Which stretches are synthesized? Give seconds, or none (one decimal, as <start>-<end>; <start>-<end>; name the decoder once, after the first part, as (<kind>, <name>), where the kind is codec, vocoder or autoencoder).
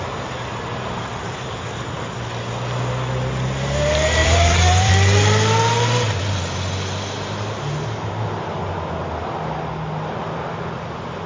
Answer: 4.2-4.9 (vocoder, BigVGAN v2)